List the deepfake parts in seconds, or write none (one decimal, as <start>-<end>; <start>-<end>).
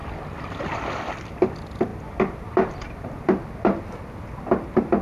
none